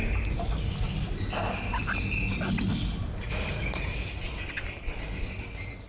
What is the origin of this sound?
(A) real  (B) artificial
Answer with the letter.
A